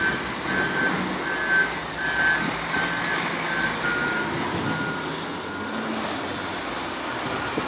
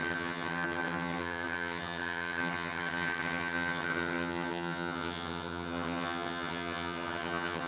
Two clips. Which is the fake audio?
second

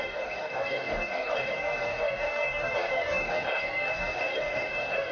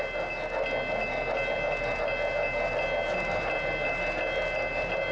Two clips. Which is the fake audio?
first